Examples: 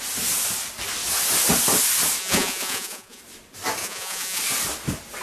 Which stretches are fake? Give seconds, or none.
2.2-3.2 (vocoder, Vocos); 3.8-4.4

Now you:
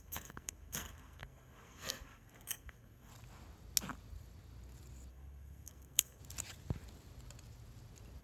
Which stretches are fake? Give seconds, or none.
0.0-3.1 (codec, SNAC); 5.1-6.2

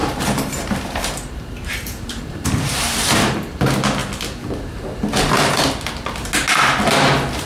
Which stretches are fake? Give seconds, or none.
0.0-3.6 (vocoder, BigVGAN v2)

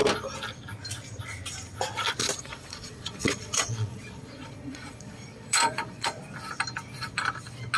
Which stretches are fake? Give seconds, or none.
2.2-6.2 (vocoder, Vocos)